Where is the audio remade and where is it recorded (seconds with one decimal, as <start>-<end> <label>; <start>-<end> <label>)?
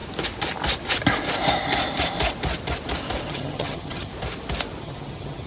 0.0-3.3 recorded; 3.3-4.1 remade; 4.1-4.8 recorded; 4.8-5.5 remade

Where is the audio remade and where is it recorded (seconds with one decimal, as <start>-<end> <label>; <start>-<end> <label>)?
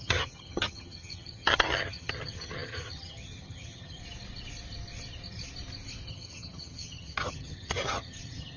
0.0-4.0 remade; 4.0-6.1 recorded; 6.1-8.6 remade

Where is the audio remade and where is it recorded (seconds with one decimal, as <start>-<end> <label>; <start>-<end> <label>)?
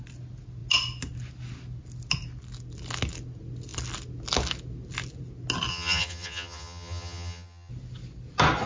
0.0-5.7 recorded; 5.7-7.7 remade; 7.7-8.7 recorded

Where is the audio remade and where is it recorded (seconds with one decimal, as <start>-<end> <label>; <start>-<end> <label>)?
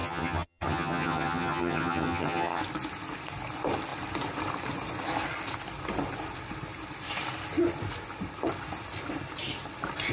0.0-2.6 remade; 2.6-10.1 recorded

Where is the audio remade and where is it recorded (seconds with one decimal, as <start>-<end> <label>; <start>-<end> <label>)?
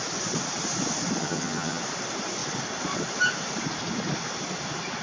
0.0-1.2 recorded; 1.2-1.8 remade; 1.8-5.0 recorded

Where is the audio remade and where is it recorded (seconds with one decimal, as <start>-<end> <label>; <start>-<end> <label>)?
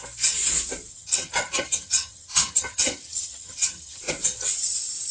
0.0-0.9 recorded; 0.9-4.0 remade; 4.0-5.1 recorded